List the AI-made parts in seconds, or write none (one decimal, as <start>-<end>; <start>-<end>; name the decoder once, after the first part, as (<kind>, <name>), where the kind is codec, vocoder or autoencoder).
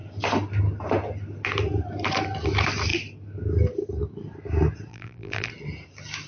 4.9-5.5 (vocoder, BigVGAN v2)